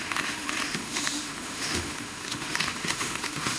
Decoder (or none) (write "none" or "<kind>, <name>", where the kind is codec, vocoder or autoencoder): autoencoder, DAC-VAE